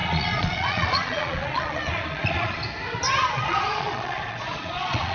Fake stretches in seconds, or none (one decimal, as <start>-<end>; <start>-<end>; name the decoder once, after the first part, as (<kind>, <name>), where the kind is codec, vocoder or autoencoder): 0.0-2.6 (vocoder, Vocos); 3.3-5.1